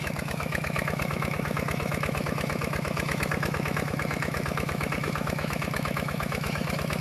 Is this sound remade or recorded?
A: remade